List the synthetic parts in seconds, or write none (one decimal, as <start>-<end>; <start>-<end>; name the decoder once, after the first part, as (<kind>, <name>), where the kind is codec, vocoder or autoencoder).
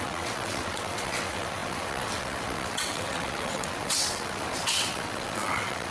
0.0-5.9 (vocoder, WaveNeXt)